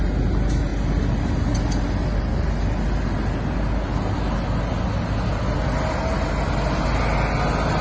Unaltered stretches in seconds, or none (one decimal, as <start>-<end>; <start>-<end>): 0.0-7.8